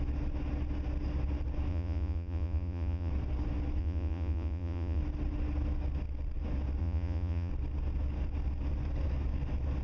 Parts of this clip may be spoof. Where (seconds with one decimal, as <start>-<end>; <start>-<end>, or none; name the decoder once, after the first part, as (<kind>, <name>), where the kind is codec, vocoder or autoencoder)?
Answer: 1.7-3.1 (vocoder, Vocos); 3.8-5.0; 6.8-7.5